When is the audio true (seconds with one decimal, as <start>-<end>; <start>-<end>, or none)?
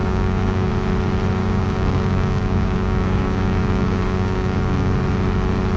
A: 0.7-1.4; 4.9-5.8